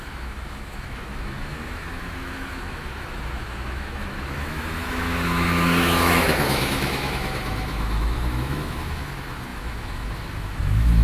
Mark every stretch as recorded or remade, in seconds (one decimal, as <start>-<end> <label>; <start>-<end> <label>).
0.0-11.0 remade

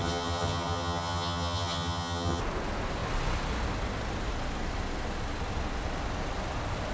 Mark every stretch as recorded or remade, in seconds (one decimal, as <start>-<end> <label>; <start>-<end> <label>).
0.0-2.4 remade; 2.4-6.9 recorded

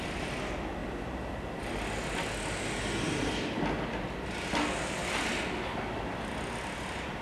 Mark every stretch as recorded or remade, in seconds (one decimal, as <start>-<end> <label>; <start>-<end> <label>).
0.0-7.2 recorded

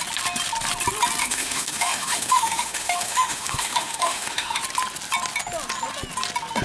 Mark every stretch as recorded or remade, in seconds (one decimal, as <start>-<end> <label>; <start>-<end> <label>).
0.0-1.2 recorded; 1.2-4.6 remade; 4.6-6.6 recorded

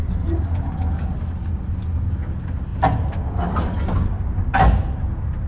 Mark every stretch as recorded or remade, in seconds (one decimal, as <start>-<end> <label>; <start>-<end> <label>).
0.0-5.5 recorded

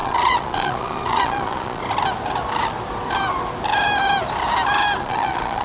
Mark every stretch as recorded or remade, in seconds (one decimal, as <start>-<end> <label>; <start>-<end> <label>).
0.0-1.8 remade; 1.8-5.0 recorded; 5.0-5.6 remade